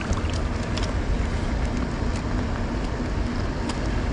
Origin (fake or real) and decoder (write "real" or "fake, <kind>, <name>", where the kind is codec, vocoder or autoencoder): real